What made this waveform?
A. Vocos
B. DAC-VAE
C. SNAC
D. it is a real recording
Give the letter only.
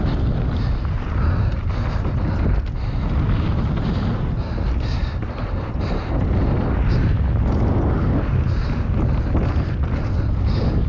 D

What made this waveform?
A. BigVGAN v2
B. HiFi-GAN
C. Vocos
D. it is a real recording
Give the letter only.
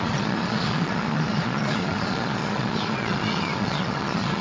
C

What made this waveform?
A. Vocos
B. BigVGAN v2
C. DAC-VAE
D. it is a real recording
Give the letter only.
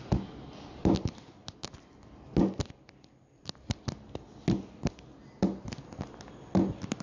D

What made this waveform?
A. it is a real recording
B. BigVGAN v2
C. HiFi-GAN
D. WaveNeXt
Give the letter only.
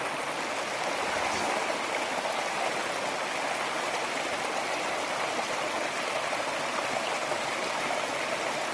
A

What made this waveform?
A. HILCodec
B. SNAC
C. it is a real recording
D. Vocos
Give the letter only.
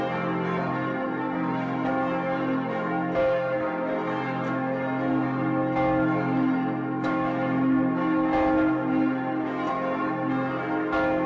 C